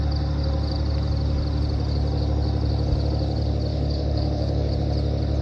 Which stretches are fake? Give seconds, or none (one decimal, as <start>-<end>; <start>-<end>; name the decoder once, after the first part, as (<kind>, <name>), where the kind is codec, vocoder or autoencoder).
3.7-4.7 (codec, DAC)